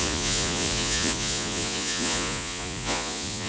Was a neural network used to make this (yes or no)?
yes